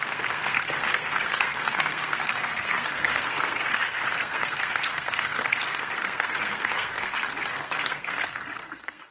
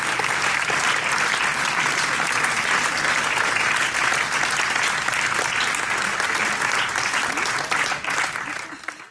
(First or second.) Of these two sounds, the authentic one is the second